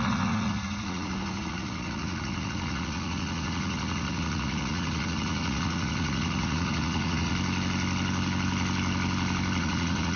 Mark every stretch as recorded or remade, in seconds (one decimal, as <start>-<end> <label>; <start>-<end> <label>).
0.0-7.3 remade; 7.3-9.6 recorded; 9.6-10.2 remade